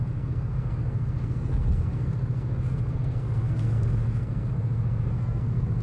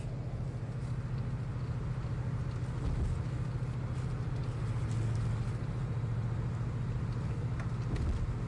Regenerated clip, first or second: first